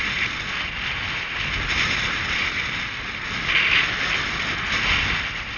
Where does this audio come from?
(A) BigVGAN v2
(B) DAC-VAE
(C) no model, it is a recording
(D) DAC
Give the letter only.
C